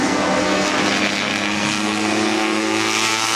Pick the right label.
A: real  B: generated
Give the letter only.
B